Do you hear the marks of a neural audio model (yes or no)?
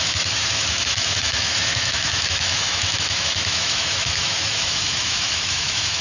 yes